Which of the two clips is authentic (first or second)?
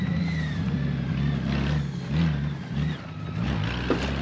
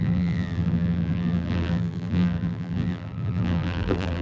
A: first